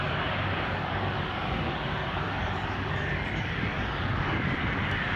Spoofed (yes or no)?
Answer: yes